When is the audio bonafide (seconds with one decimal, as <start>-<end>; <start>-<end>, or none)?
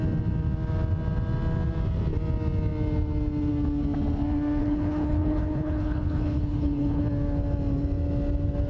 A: 0.0-4.6; 7.0-8.7